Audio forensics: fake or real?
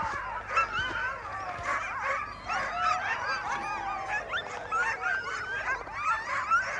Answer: real